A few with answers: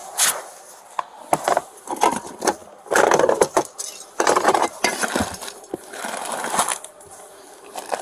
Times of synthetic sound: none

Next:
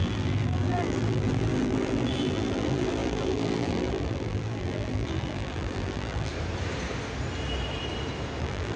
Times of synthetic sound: 0.0-6.3 (vocoder, BigVGAN v2); 8.4-8.8